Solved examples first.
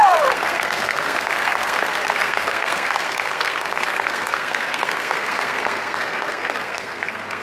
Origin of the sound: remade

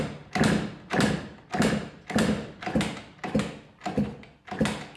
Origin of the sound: recorded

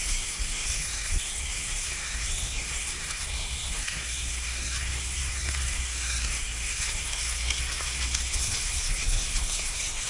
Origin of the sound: remade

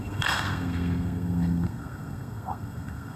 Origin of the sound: remade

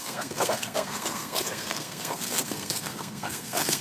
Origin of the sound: remade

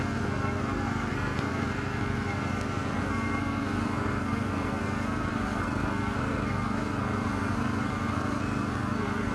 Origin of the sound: remade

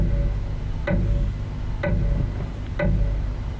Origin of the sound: recorded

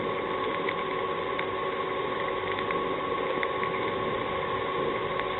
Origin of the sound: recorded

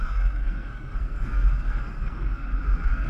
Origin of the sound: remade